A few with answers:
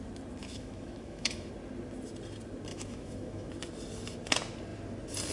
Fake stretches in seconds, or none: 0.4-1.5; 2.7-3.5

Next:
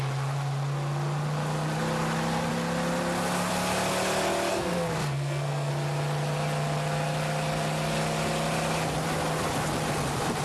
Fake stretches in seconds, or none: 4.5-5.7

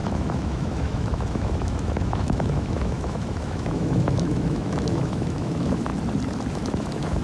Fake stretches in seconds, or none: 0.0-5.9; 6.5-7.2

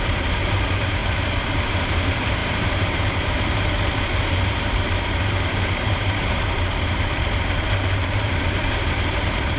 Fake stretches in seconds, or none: 0.0-1.0; 1.6-9.6

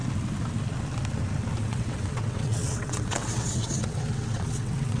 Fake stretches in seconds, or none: 1.6-5.0

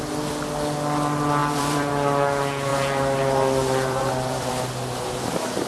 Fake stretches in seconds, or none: 1.4-1.9; 2.7-4.5